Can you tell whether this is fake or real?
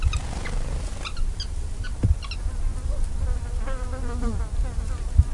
real